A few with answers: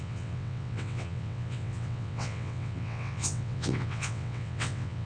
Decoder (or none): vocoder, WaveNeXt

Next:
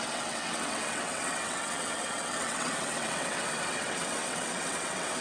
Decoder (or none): vocoder, WaveNeXt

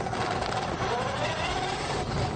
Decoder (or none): none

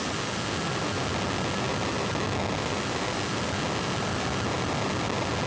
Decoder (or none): none